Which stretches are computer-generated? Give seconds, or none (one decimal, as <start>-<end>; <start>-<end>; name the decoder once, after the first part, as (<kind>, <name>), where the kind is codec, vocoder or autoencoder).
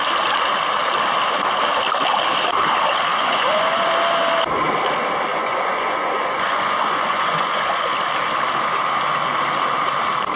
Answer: 3.1-3.9 (vocoder, Vocos); 5.3-7.9